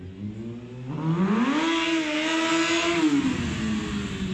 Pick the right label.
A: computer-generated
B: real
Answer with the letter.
B